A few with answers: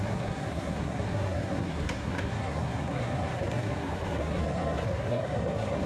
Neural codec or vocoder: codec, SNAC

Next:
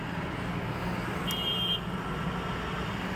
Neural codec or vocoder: none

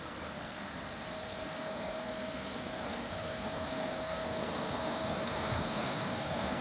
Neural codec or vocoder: codec, SNAC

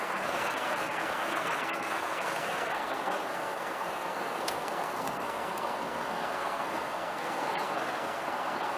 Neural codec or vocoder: codec, SNAC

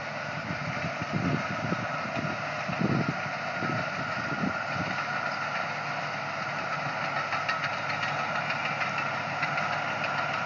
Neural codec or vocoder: none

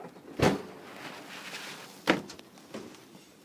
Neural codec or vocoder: none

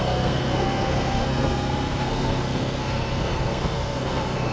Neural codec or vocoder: codec, SNAC